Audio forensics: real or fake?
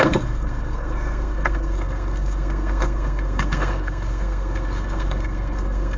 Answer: fake